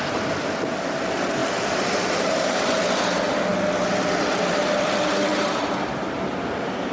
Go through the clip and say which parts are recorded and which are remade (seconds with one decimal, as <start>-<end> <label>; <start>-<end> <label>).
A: 0.0-1.4 recorded; 1.4-2.6 remade; 2.6-5.3 recorded; 5.3-6.2 remade; 6.2-6.9 recorded